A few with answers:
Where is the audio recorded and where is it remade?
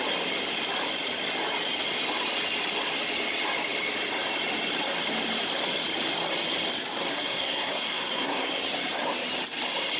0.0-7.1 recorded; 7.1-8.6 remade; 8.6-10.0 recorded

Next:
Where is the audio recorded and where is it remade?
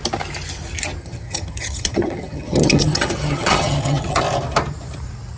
0.0-1.0 recorded; 1.0-4.2 remade; 4.2-5.4 recorded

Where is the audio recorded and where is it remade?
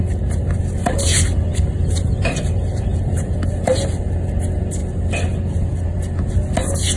0.0-7.0 recorded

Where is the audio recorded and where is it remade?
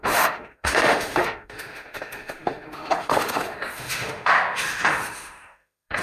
0.0-6.0 remade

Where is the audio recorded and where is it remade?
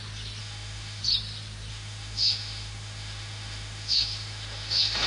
0.0-0.4 recorded; 0.4-1.0 remade; 1.0-1.7 recorded; 1.7-5.1 remade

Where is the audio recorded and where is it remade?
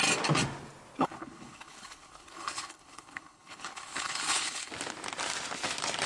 0.0-1.0 recorded; 1.0-4.7 remade; 4.7-6.1 recorded